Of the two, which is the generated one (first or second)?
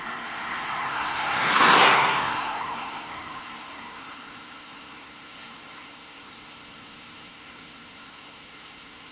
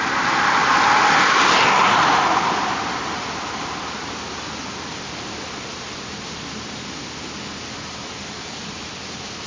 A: first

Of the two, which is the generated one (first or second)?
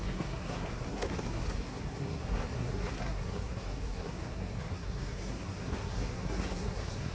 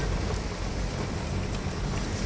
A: first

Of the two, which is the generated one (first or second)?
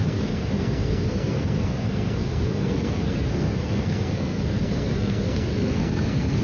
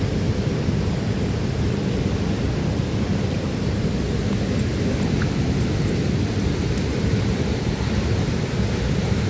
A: first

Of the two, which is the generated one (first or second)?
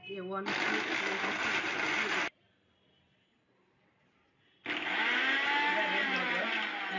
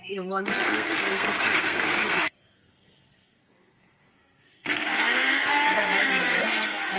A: second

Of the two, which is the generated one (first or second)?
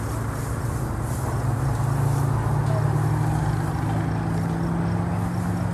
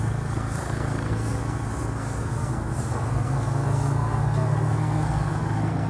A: second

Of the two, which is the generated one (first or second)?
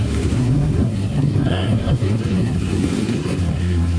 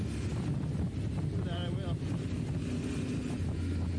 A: first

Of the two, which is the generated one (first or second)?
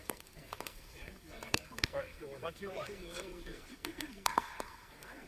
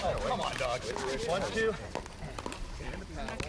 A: first